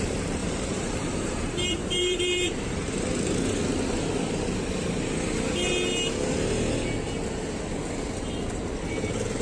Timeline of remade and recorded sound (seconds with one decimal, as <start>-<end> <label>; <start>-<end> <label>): 0.0-0.4 recorded; 0.4-3.6 remade; 3.6-9.4 recorded